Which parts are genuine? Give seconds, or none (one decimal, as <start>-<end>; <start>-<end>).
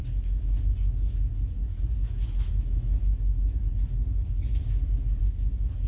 0.6-1.7; 3.7-5.9